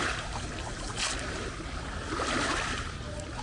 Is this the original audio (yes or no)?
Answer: yes